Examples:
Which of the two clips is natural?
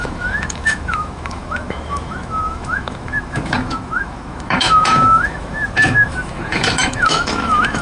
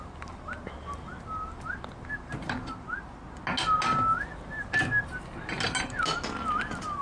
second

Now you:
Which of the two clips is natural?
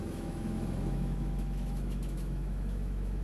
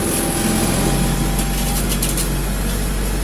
second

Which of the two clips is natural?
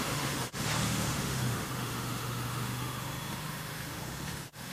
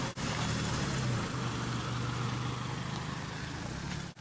second